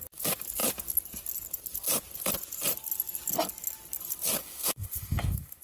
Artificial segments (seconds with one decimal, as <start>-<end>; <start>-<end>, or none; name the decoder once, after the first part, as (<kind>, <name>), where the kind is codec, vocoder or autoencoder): 4.4-5.6 (autoencoder, DAC-VAE)